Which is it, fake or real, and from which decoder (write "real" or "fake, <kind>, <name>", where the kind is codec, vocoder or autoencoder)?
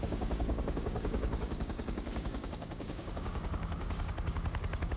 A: fake, codec, DAC